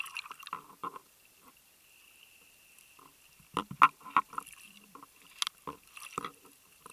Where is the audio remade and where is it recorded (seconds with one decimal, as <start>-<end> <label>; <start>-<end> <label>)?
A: 0.0-6.9 recorded

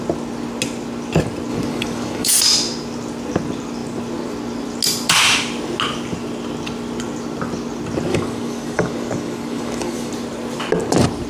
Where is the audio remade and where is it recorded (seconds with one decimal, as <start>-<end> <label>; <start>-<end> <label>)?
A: 0.0-1.5 recorded; 1.5-2.3 remade; 2.3-8.1 recorded; 8.1-10.1 remade; 10.1-11.3 recorded

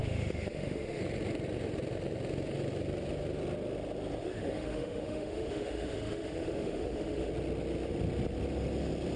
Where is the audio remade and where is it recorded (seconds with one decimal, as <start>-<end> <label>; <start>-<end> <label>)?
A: 0.0-1.0 remade; 1.0-4.2 recorded; 4.2-7.3 remade; 7.3-9.2 recorded

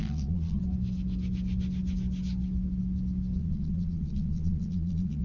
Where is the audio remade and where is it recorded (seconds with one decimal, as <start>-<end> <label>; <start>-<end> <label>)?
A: 0.0-0.6 remade; 0.6-3.4 recorded; 3.4-5.2 remade

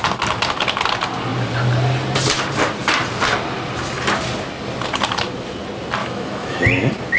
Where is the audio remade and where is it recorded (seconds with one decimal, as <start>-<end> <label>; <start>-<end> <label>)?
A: 0.0-6.0 recorded; 6.0-6.6 remade; 6.6-7.2 recorded